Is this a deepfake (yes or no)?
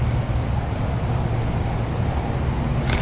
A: no